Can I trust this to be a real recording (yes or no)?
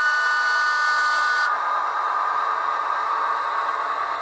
yes